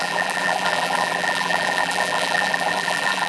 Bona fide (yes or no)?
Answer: no